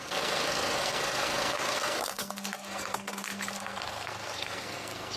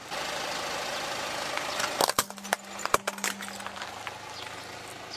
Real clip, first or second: second